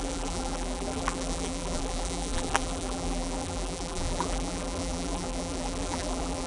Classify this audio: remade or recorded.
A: remade